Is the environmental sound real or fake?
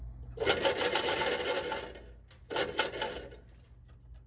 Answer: real